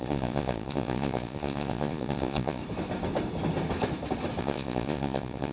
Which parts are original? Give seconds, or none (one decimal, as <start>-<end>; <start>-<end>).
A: 2.6-4.4